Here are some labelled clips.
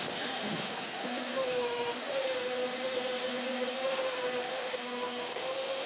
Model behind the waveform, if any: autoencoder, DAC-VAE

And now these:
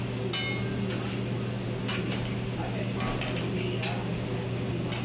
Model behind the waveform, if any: none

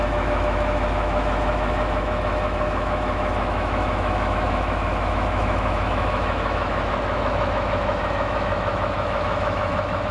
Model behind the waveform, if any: autoencoder, DAC-VAE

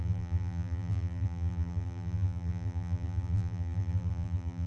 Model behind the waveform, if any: vocoder, BigVGAN v2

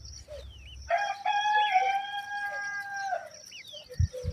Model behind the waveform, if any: none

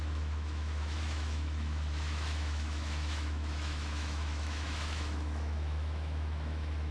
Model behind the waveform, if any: autoencoder, DAC-VAE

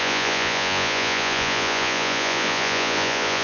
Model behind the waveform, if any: vocoder, Vocos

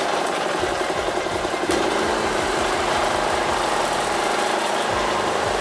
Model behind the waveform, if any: vocoder, BigVGAN v2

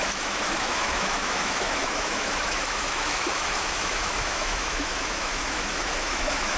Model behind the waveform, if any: autoencoder, DAC-VAE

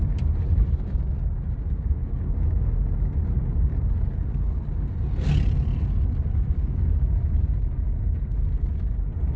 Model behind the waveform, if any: none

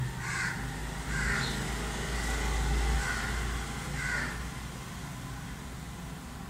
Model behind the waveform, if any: none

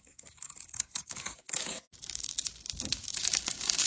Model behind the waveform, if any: codec, DAC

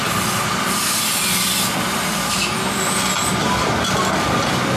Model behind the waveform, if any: none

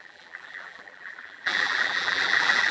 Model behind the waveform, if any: vocoder, BigVGAN v2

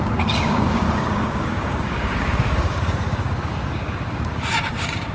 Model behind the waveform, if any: codec, DAC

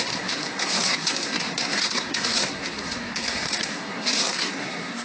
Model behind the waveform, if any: codec, SNAC